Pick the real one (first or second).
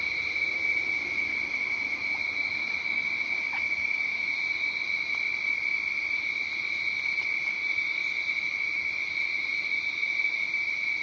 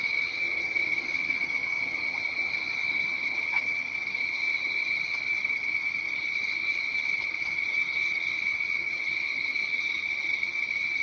first